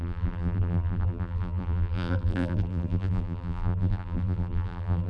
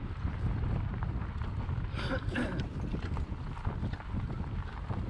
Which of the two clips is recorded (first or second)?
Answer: second